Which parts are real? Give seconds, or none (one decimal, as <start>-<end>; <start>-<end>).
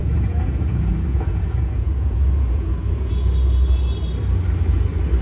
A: 3.1-5.2